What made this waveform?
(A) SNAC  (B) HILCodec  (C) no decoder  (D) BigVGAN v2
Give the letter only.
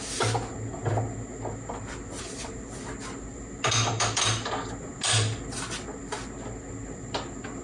C